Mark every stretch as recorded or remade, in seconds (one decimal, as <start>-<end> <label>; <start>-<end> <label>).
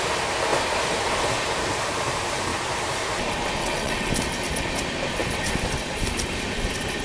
0.0-3.6 recorded; 3.6-4.1 remade; 4.1-7.0 recorded